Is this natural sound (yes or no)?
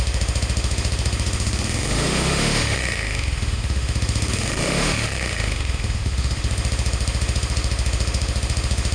no